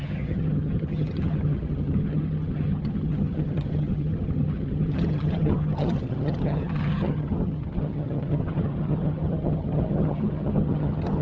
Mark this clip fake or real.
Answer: fake